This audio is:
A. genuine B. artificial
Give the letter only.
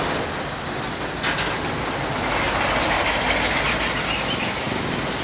A